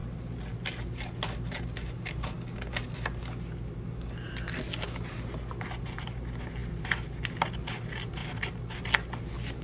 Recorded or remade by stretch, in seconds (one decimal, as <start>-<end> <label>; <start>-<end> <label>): 0.0-9.6 recorded